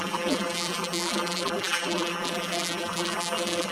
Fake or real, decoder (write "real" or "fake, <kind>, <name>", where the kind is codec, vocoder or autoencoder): fake, vocoder, BigVGAN v2